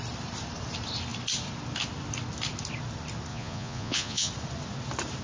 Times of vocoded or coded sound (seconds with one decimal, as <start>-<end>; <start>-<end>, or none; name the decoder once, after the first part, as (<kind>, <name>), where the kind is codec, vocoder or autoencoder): 3.3-4.3 (vocoder, Vocos)